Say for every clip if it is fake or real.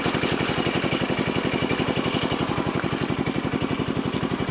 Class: real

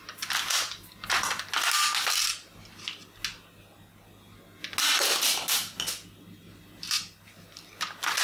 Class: real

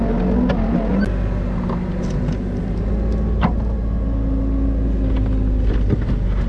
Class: real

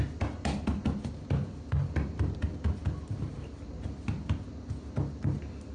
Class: real